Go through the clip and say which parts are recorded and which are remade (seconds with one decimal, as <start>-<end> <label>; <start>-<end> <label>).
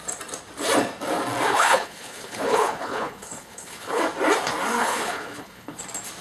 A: 0.0-1.5 recorded; 1.5-4.0 remade; 4.0-4.8 recorded; 4.8-5.8 remade; 5.8-6.2 recorded